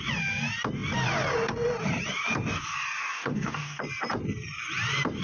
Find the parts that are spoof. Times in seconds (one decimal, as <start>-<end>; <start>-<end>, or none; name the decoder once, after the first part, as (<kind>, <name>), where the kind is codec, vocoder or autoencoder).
3.0-3.8 (codec, DAC)